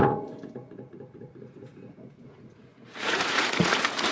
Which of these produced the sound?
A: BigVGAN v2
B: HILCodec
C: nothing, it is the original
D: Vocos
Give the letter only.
D